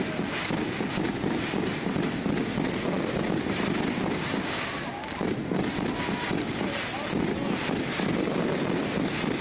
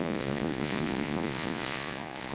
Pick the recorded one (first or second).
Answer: first